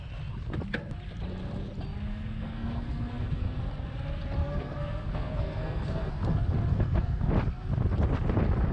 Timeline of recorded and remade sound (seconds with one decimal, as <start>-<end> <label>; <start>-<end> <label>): 0.0-2.1 recorded; 2.1-3.6 remade; 3.6-4.4 recorded; 4.4-6.1 remade; 6.1-6.7 recorded; 6.7-7.3 remade; 7.3-8.7 recorded